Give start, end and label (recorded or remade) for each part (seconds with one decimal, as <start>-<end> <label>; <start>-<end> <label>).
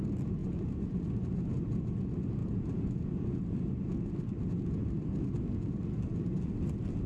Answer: 0.0-2.4 recorded; 2.4-3.4 remade; 3.4-7.1 recorded